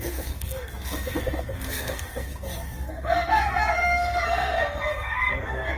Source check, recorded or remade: remade